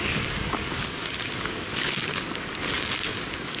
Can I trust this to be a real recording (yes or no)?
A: no